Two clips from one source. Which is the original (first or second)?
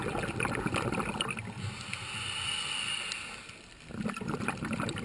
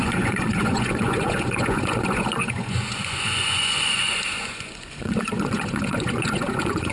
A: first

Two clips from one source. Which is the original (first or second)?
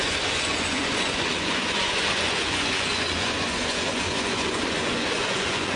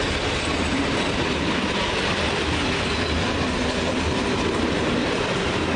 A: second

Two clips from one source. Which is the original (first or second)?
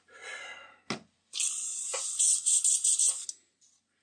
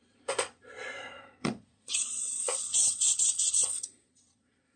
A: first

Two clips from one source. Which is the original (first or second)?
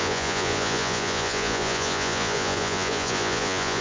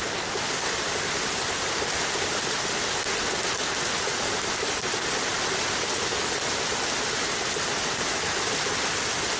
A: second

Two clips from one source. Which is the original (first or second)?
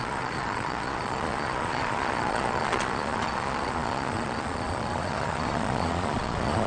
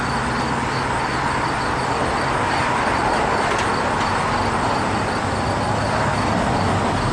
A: second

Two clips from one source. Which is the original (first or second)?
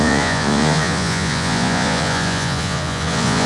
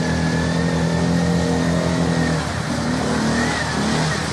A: second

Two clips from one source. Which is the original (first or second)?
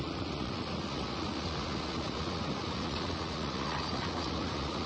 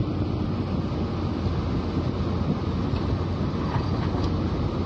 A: second